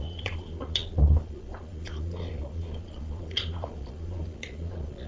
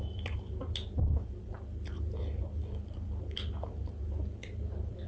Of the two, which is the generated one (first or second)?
first